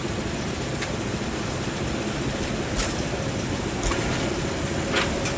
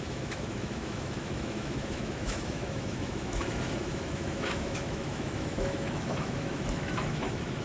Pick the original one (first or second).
first